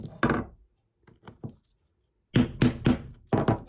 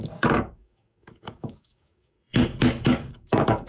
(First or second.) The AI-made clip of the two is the second